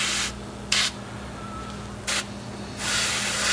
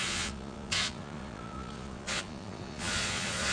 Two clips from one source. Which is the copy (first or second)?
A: second